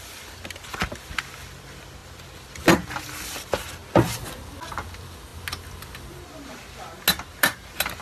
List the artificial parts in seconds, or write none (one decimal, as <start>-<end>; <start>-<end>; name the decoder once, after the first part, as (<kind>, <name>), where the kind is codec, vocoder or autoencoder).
none